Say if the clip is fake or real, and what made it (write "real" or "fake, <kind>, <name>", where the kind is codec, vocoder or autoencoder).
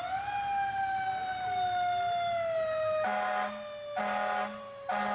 real